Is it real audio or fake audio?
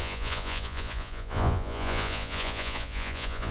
fake